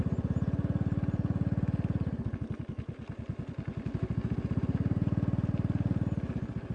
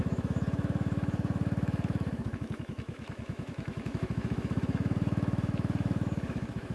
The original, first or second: first